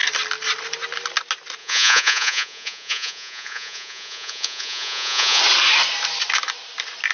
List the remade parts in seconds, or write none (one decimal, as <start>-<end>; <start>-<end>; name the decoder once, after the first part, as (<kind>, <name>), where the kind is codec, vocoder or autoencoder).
1.6-5.4 (vocoder, Vocos)